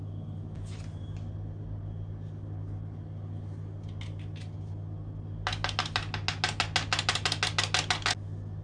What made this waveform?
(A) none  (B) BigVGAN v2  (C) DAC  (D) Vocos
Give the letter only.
A